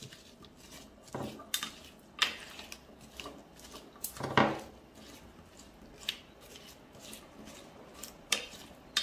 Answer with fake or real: real